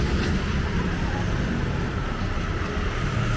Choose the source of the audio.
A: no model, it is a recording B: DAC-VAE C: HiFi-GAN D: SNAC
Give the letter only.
A